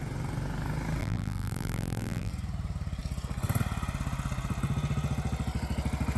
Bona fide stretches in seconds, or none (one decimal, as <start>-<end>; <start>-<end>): 0.0-1.0; 2.3-6.2